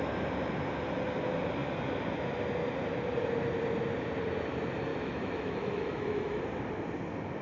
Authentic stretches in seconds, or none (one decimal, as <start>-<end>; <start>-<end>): 0.0-4.9; 6.4-7.4